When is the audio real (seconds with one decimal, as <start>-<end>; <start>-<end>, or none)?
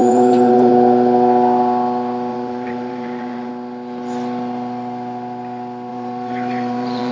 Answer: 0.7-2.3; 3.5-5.9